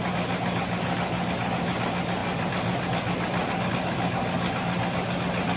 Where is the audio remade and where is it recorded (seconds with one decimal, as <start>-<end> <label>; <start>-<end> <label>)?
0.0-2.2 recorded; 2.2-3.7 remade; 3.7-5.6 recorded